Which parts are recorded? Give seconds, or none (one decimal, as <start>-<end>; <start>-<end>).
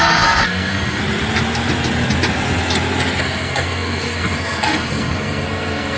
1.0-3.2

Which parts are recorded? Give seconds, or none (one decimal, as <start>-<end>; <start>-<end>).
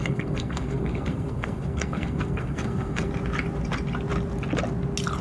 3.1-5.2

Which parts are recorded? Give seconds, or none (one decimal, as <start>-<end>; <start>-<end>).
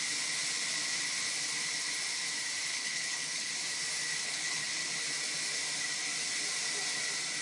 0.0-2.7; 3.5-4.2; 4.7-7.4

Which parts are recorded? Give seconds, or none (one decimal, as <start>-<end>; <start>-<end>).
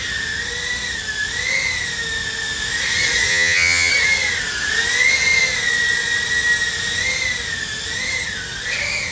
0.0-3.3; 3.9-9.1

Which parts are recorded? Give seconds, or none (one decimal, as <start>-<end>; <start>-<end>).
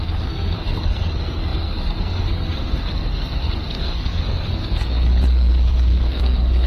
none